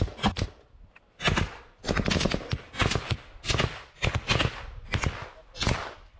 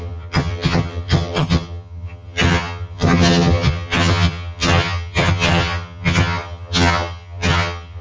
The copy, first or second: second